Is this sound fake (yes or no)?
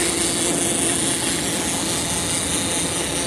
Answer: no